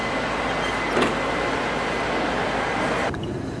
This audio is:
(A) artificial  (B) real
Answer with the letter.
B